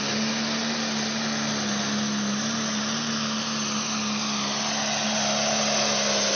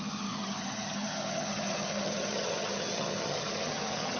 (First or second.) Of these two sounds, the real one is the first